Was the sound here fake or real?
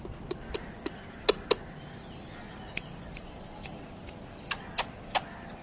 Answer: real